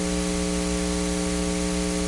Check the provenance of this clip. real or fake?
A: real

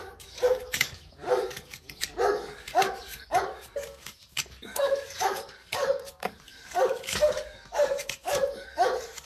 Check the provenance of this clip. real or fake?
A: fake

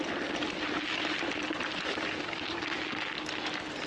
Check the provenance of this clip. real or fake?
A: real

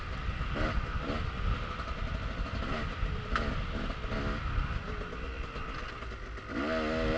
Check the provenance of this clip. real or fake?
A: real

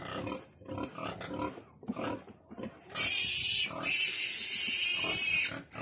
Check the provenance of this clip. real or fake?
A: real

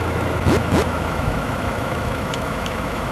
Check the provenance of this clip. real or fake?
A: fake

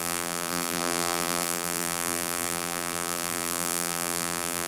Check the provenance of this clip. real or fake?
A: fake